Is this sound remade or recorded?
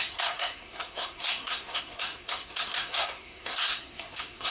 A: remade